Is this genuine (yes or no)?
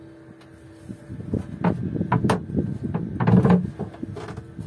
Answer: yes